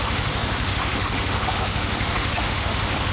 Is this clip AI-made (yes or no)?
yes